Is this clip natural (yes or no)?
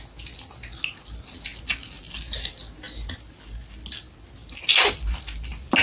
yes